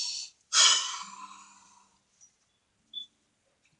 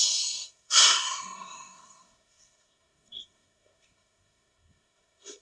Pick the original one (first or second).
first